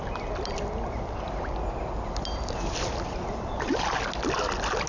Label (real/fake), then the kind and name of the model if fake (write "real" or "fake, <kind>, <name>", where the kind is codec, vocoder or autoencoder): real